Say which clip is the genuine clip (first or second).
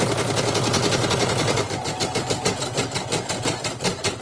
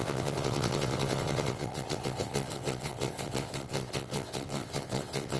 first